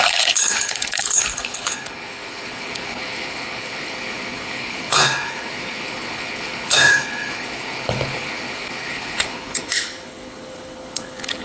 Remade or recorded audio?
remade